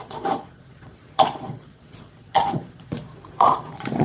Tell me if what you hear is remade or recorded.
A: remade